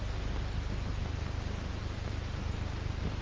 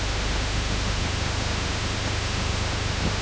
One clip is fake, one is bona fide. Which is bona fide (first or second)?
first